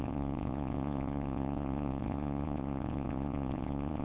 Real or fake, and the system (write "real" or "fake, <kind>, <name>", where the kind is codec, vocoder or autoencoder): fake, vocoder, Vocos